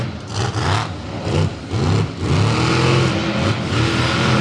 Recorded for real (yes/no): yes